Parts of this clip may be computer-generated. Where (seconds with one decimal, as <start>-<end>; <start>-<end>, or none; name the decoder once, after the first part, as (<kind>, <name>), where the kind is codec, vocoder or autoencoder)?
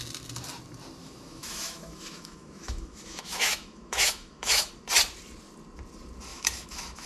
1.0-4.7 (autoencoder, DAC-VAE); 6.3-7.1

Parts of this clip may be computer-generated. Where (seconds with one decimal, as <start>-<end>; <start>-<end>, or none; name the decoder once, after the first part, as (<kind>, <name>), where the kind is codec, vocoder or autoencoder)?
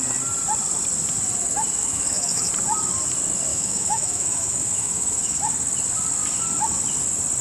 1.8-2.5 (autoencoder, DAC-VAE); 3.5-5.4